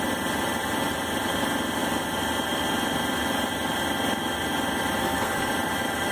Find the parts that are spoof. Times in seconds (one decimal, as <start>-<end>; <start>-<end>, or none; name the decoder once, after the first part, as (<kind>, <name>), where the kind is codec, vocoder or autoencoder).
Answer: 5.0-5.5 (codec, SNAC)